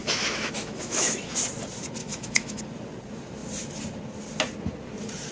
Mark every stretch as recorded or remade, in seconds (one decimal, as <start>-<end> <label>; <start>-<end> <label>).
0.0-1.3 remade; 1.3-2.0 recorded; 2.0-2.6 remade; 2.6-5.3 recorded